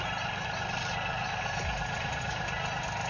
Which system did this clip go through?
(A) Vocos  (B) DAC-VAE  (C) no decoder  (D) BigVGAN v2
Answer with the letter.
C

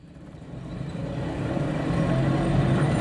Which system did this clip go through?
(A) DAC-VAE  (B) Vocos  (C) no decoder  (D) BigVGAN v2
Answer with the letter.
D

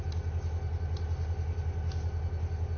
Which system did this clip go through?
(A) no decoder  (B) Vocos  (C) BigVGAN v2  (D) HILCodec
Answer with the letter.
A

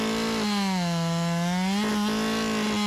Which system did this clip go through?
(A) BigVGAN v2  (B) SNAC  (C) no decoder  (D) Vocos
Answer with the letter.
C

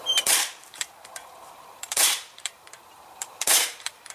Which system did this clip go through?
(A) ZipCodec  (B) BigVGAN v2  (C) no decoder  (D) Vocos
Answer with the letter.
B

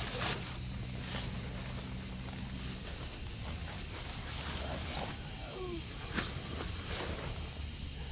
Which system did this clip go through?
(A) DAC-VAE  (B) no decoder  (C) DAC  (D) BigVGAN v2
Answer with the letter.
B